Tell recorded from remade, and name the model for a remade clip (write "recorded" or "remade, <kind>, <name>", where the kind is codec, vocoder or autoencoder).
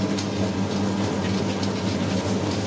recorded